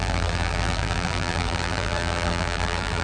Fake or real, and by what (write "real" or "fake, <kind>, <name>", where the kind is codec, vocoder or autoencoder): fake, vocoder, BigVGAN v2